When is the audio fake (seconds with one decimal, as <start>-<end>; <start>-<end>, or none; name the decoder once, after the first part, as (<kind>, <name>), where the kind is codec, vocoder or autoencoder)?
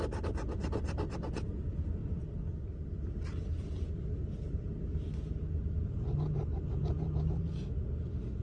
none